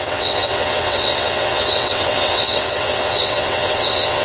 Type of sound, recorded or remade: remade